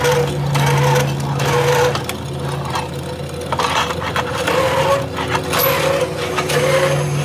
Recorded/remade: recorded